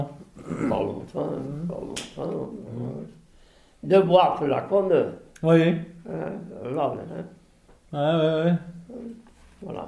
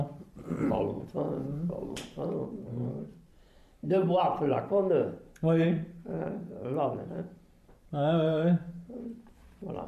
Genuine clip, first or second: first